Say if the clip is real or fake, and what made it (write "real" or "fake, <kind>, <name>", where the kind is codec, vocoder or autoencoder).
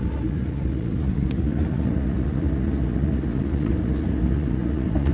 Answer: fake, vocoder, Vocos